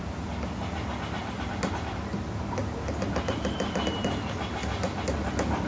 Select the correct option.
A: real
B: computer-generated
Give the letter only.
A